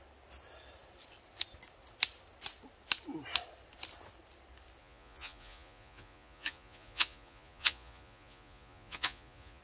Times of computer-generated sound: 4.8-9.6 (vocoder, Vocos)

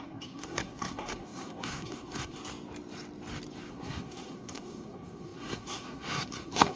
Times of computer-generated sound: 0.0-2.4 (codec, SNAC); 3.7-6.8